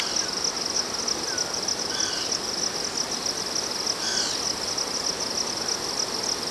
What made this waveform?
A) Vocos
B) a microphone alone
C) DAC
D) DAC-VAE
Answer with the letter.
B